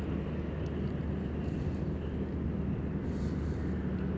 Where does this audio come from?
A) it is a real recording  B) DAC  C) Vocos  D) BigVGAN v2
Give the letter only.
A